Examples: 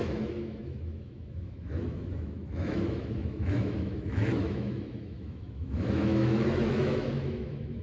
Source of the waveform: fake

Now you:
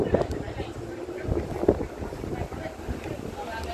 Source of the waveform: real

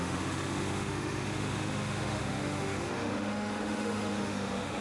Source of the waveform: fake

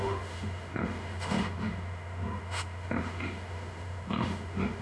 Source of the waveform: fake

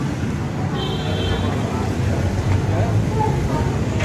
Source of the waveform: real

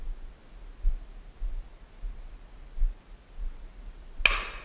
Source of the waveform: real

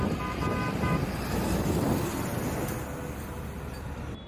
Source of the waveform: real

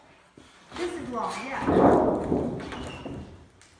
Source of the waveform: real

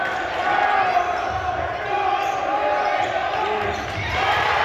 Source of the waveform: real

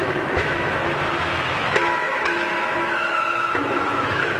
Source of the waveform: fake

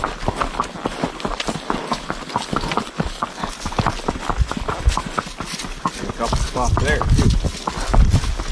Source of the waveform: real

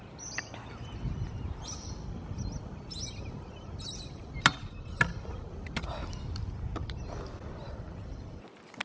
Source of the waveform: real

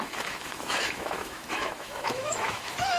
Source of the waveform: fake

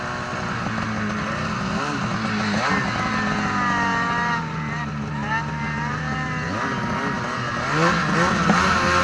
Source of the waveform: real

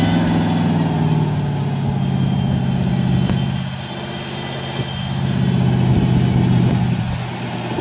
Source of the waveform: real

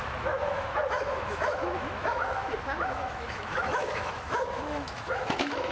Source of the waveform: fake